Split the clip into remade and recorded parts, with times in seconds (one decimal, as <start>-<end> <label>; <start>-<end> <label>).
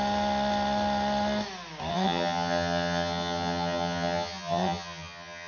0.0-1.9 recorded; 1.9-5.5 remade